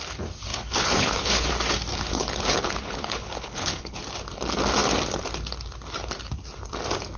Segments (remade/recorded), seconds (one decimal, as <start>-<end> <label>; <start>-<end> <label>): 0.0-0.5 recorded; 0.5-1.5 remade; 1.5-1.9 recorded; 1.9-4.0 remade; 4.0-7.2 recorded